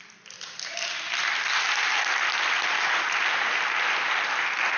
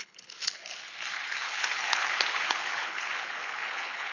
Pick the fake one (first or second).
second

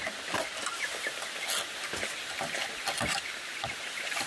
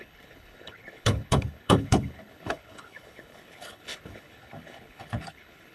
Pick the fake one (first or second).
second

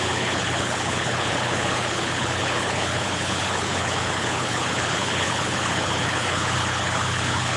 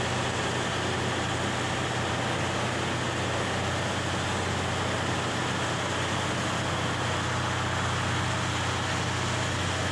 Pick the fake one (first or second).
first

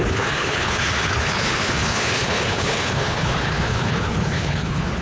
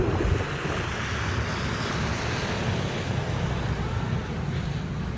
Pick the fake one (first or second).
first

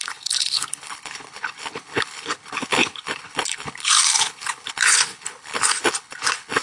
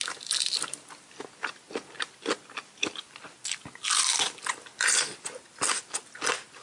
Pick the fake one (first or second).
first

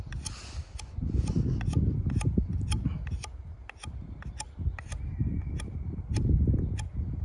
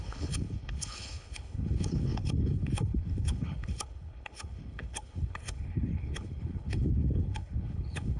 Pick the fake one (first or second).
second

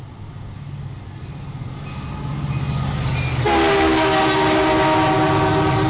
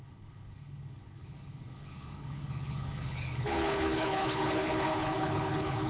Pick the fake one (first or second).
second